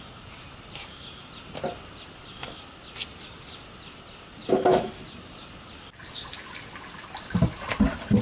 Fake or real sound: real